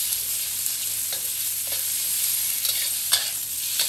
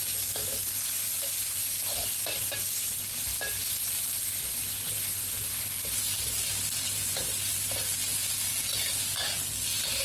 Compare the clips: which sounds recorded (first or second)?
second